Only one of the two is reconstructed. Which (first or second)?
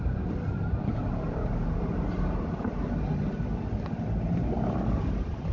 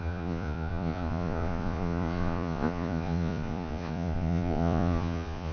second